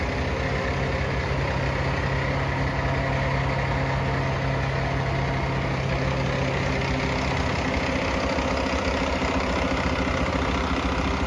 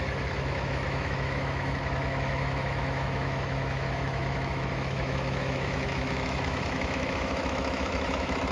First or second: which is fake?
second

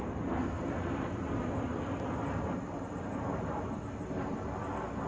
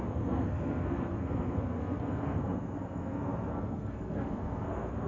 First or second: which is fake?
second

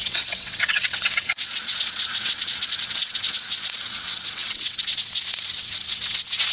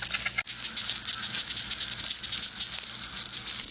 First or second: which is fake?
first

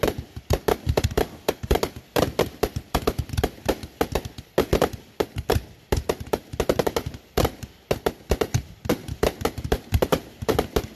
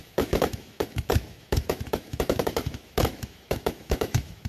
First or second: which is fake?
second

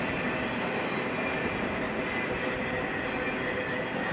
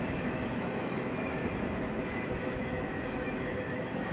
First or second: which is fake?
second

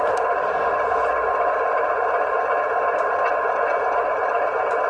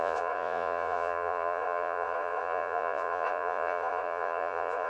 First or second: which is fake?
second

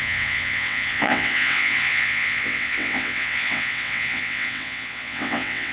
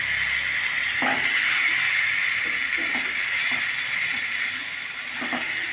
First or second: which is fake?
first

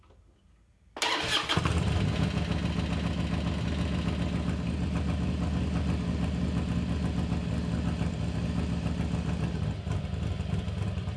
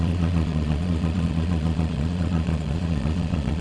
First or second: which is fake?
second